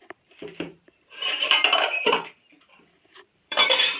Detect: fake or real fake